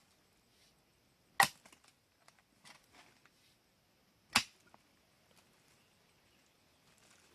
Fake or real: real